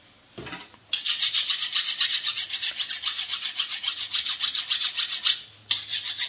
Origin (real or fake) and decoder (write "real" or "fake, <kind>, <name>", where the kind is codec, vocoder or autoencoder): real